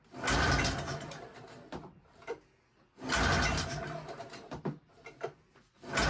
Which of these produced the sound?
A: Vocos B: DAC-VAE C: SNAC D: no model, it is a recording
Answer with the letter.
D